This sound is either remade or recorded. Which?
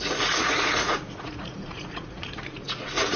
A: remade